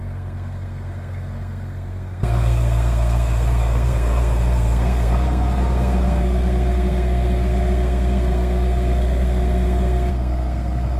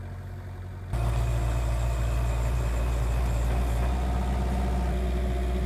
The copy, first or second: first